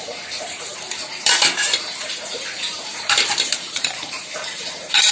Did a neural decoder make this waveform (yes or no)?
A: yes